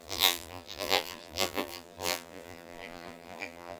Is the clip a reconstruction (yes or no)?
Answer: yes